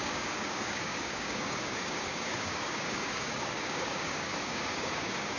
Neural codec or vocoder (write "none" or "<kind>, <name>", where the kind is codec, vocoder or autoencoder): codec, DAC